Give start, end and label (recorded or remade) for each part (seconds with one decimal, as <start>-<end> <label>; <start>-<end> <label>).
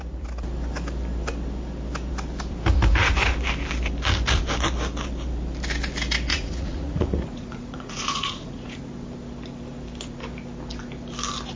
0.0-6.3 recorded; 6.3-8.8 remade; 8.8-11.6 recorded